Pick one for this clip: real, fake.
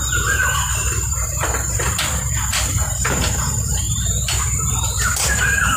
fake